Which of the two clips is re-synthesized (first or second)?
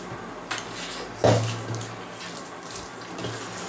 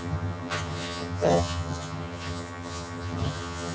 second